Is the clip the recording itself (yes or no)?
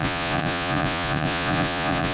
no